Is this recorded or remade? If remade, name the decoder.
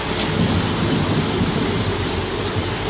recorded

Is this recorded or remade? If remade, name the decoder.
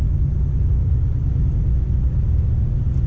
recorded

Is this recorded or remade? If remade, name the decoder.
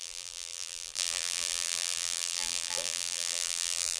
remade, vocoder, BigVGAN v2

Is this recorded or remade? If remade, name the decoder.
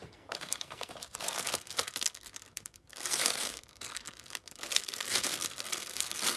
remade, codec, SNAC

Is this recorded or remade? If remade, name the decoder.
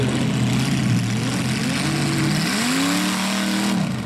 recorded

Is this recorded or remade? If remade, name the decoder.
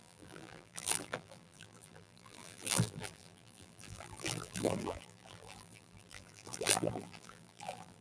remade, vocoder, BigVGAN v2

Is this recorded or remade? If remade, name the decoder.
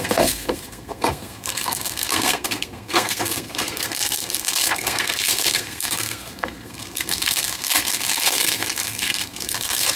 remade, codec, SNAC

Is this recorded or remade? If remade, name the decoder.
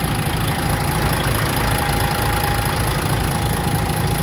recorded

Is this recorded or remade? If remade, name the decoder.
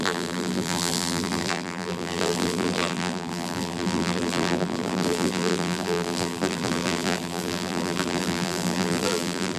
remade, vocoder, BigVGAN v2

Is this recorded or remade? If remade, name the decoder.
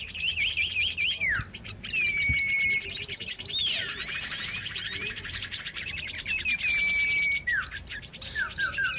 remade, vocoder, BigVGAN v2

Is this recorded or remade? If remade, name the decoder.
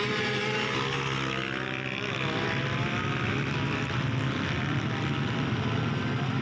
recorded